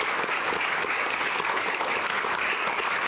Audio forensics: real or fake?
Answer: fake